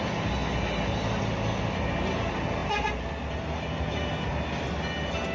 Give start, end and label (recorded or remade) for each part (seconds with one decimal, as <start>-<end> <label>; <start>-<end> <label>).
0.0-5.3 recorded